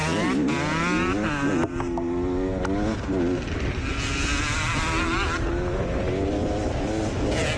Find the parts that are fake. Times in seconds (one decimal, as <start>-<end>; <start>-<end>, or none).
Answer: none